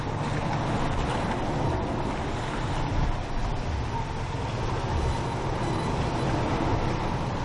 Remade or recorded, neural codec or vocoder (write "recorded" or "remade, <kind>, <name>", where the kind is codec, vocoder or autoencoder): recorded